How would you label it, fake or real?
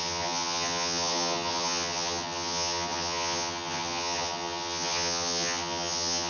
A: fake